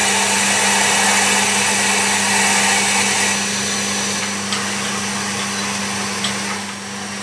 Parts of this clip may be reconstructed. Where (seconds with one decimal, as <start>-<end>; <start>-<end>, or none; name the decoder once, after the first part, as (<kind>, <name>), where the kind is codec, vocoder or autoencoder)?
none